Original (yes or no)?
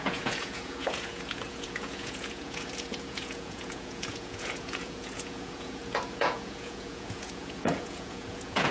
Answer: no